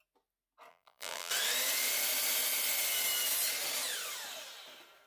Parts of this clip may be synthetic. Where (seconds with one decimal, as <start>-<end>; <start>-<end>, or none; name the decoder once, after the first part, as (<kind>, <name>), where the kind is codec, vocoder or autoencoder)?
0.7-1.3 (vocoder, BigVGAN v2)

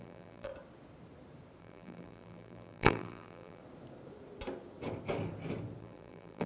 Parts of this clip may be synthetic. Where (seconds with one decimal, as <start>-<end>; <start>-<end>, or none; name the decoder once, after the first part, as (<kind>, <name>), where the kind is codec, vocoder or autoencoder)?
0.0-0.5 (vocoder, BigVGAN v2); 1.6-3.6; 5.8-6.5

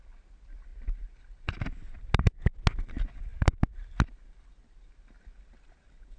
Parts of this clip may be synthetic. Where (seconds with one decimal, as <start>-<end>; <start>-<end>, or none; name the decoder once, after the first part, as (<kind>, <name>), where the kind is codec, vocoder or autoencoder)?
none

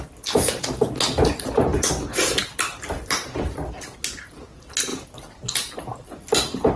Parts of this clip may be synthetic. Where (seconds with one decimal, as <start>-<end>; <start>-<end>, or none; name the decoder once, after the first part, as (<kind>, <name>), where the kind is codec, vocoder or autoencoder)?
1.7-3.7 (vocoder, BigVGAN v2); 4.9-6.8

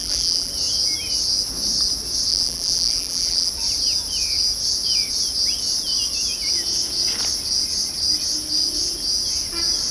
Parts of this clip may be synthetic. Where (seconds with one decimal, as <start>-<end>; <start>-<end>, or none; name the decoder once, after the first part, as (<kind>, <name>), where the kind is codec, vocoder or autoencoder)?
0.0-0.5 (vocoder, BigVGAN v2); 2.3-3.5

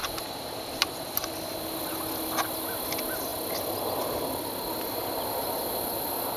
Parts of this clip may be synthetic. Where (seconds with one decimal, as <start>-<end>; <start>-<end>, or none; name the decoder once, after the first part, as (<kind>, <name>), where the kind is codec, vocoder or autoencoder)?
none